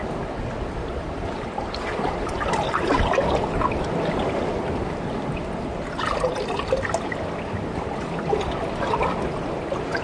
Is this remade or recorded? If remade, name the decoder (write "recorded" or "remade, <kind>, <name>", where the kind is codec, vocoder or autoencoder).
recorded